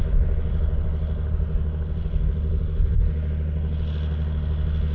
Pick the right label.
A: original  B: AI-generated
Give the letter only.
A